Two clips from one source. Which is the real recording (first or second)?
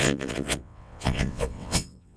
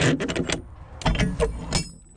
second